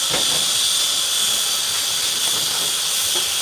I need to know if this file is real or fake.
real